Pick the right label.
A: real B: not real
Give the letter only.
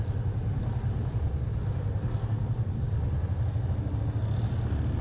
A